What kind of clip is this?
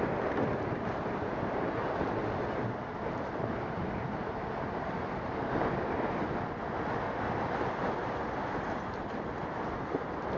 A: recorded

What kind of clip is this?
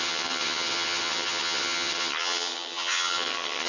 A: remade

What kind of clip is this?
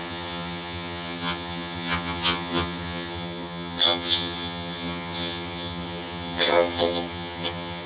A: remade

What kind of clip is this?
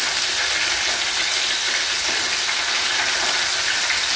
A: recorded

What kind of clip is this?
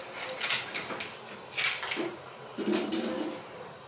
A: recorded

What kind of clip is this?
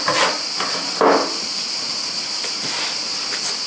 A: recorded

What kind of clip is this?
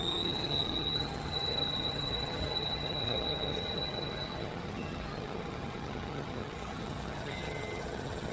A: remade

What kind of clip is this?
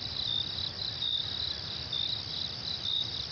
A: recorded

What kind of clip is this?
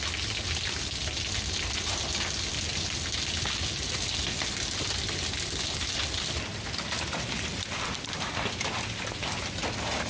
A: recorded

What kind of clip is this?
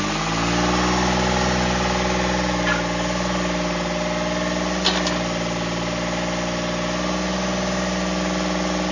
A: recorded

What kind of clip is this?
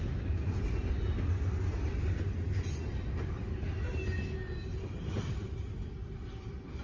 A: recorded